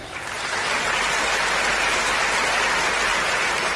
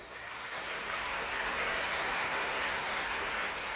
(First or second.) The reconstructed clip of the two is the second